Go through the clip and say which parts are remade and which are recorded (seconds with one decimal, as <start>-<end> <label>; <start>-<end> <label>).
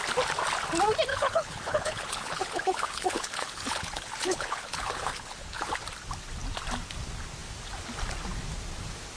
0.0-1.1 recorded; 1.1-5.7 remade; 5.7-9.2 recorded